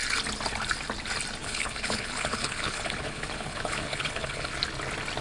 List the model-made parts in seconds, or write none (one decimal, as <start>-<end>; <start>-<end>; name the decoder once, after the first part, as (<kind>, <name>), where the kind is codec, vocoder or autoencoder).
1.4-4.5 (codec, HILCodec)